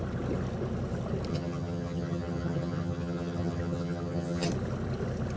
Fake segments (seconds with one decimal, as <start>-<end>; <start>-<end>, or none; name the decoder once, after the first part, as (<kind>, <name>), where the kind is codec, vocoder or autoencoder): 1.3-4.5 (vocoder, HiFi-GAN)